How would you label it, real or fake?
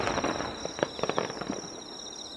real